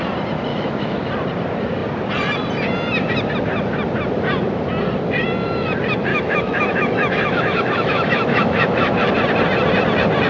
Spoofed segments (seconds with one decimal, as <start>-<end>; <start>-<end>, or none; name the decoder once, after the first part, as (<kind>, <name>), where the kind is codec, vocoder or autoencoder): 0.5-1.1 (autoencoder, DAC-VAE); 6.1-9.1